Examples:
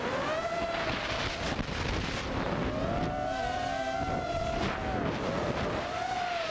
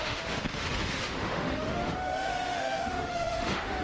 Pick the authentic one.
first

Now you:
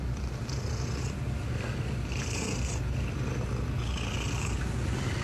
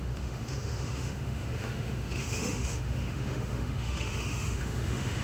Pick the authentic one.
first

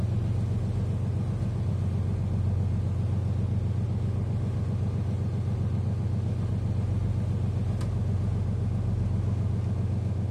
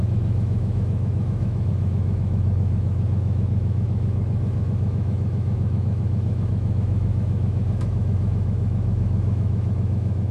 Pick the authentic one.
first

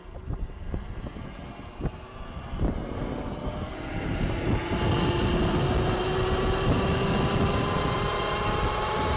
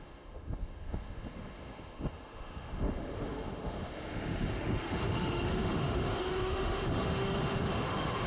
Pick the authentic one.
first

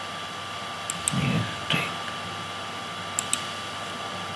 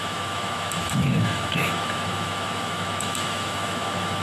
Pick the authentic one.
first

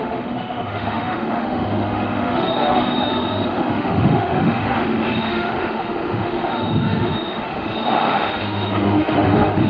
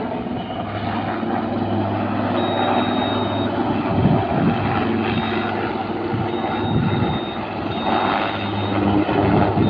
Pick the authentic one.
second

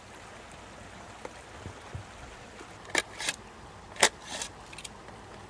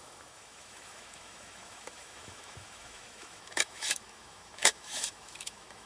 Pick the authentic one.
first